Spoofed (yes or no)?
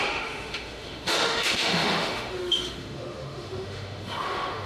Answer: yes